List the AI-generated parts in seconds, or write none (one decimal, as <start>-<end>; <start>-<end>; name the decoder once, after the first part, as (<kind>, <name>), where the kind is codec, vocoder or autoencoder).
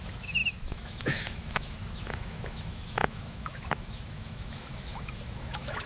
0.0-5.9 (autoencoder, DAC-VAE)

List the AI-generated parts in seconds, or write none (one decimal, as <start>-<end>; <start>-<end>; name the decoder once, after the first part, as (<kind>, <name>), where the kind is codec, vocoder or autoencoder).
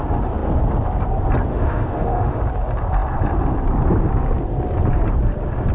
1.5-2.4 (autoencoder, DAC-VAE)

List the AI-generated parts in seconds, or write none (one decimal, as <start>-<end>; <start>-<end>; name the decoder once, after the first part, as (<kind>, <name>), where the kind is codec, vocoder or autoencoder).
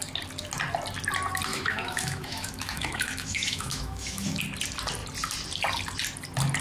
1.5-4.4 (autoencoder, DAC-VAE)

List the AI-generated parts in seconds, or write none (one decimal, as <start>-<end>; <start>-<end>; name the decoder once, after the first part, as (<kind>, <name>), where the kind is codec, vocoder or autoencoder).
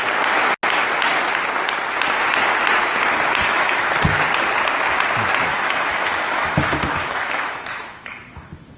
3.4-3.9 (autoencoder, DAC-VAE); 5.5-8.8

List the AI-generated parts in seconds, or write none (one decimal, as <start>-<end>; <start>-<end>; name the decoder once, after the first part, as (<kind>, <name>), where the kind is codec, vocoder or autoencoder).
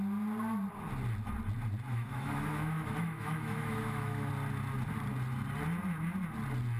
1.9-4.3 (autoencoder, DAC-VAE)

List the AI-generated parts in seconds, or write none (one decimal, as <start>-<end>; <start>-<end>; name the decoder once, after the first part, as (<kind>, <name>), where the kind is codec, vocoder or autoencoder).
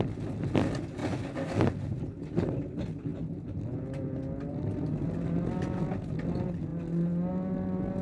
none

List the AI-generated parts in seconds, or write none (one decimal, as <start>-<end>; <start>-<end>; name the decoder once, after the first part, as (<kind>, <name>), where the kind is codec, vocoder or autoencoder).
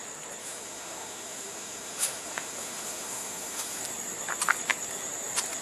0.4-3.8 (autoencoder, DAC-VAE)